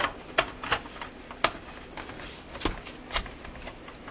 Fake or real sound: real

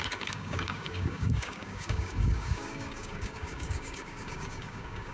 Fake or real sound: fake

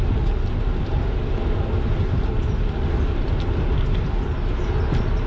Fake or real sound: real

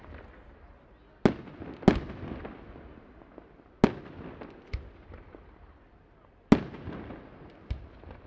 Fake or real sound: real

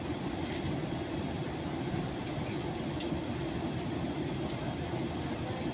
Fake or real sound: real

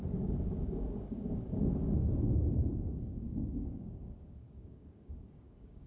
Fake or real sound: fake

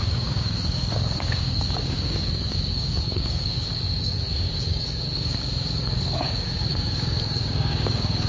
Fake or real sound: fake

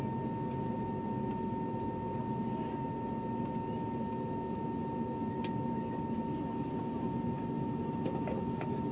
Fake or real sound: real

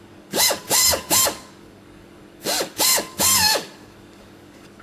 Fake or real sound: fake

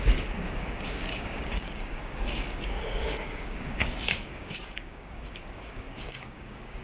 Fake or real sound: fake